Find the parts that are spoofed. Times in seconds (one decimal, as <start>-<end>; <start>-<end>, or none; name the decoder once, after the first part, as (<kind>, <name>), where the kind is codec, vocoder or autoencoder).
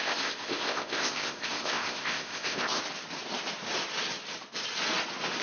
0.0-2.8 (codec, ZipCodec)